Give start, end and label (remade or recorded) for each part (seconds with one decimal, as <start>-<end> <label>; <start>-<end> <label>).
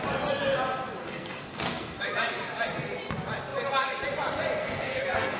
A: 0.0-1.0 recorded; 1.0-2.0 remade; 2.0-4.6 recorded; 4.6-5.4 remade